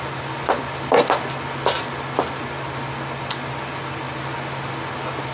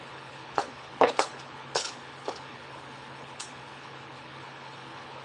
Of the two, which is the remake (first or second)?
second